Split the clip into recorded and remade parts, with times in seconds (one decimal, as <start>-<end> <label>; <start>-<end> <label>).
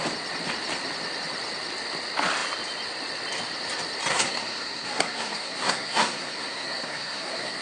0.0-4.1 recorded; 4.1-7.6 remade